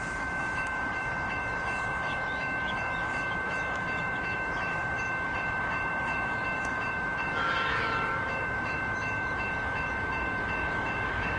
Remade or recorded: remade